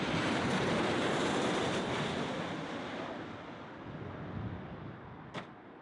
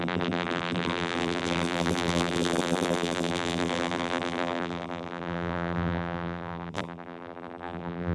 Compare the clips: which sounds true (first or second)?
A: first